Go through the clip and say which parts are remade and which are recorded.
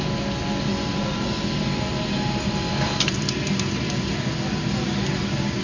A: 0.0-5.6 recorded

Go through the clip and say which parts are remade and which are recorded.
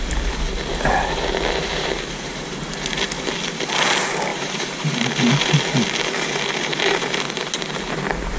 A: 0.0-1.6 recorded; 1.6-2.6 remade; 2.6-4.3 recorded; 4.3-5.0 remade; 5.0-6.7 recorded; 6.7-7.2 remade; 7.2-8.4 recorded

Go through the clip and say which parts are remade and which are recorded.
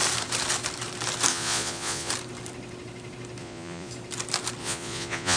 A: 0.0-1.3 recorded; 1.3-2.1 remade; 2.1-3.4 recorded; 3.4-3.9 remade; 3.9-4.6 recorded; 4.6-5.4 remade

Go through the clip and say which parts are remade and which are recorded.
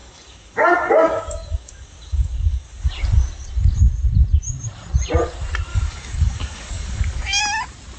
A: 0.0-2.9 remade; 2.9-5.7 recorded; 5.7-7.4 remade; 7.4-8.0 recorded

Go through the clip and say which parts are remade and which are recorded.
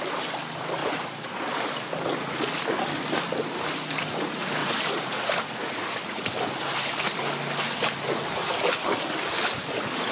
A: 0.0-0.8 recorded; 0.8-1.9 remade; 1.9-4.6 recorded; 4.6-6.3 remade; 6.3-10.1 recorded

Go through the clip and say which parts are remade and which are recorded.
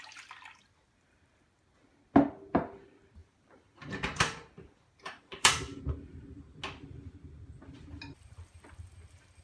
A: 0.0-3.2 recorded; 3.2-5.8 remade; 5.8-9.4 recorded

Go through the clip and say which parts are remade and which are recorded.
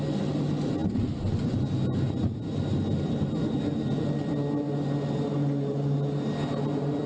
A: 0.0-7.1 recorded